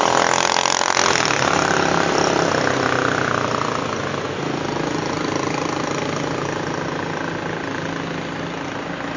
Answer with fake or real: real